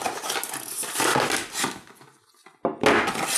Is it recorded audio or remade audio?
recorded